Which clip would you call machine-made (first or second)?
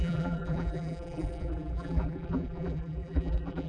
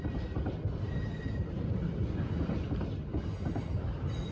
first